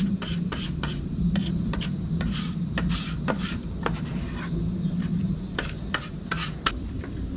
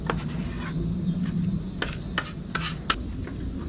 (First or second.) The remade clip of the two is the first